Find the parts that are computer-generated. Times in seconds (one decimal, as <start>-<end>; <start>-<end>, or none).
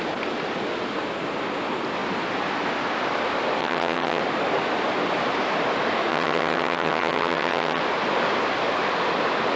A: 3.6-4.2; 6.1-7.8